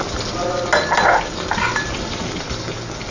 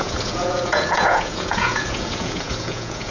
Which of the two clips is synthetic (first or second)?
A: second